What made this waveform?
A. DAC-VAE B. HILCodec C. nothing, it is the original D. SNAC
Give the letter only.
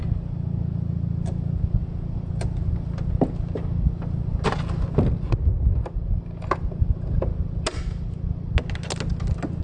C